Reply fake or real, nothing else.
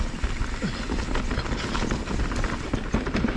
real